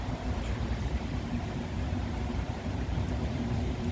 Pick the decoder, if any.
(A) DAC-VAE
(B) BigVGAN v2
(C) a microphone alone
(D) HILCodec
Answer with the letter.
B